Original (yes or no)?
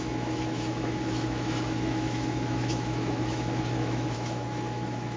no